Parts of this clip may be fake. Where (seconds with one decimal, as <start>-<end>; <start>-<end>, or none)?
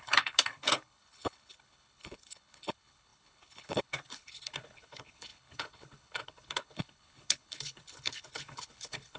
0.0-9.2